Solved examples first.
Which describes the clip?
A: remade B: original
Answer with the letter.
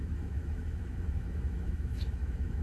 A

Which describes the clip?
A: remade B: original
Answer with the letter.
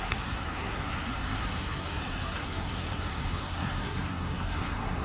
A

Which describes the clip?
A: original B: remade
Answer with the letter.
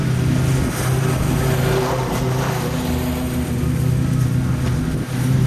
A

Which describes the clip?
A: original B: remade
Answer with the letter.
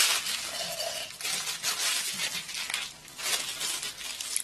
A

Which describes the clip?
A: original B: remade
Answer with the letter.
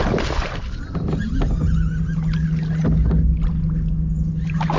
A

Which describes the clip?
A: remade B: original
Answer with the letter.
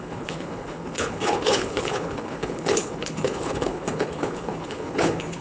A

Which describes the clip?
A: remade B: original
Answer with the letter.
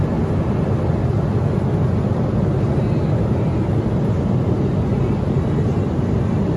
B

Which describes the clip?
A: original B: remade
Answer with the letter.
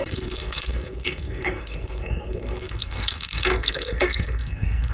B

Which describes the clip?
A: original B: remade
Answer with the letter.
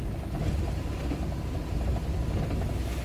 A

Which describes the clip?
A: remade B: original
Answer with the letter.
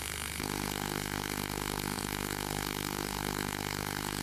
A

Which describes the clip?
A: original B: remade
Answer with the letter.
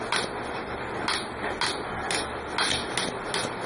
A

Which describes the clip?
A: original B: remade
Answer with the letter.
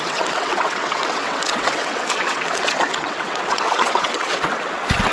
B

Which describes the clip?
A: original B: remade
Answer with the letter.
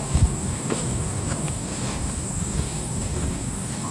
B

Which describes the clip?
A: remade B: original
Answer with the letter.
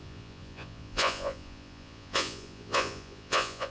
A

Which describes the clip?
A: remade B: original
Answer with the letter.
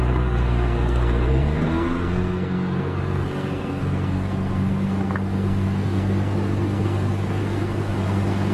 A